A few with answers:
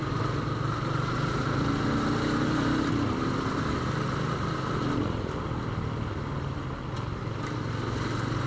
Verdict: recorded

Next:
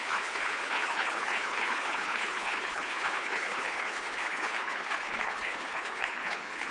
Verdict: remade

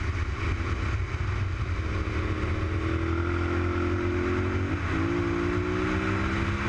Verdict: recorded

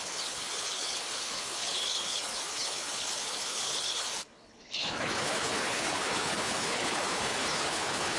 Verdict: remade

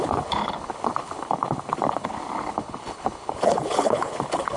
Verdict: remade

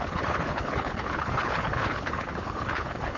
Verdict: remade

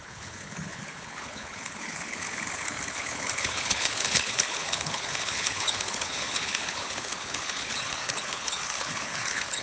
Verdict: remade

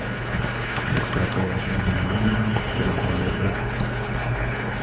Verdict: remade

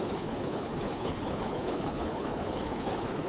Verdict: remade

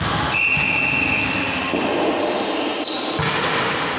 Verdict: recorded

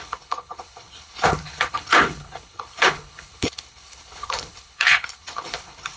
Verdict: remade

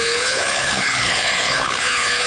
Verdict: remade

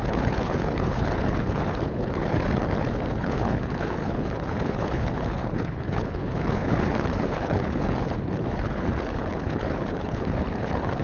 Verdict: remade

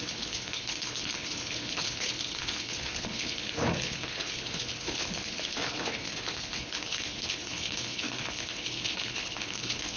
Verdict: remade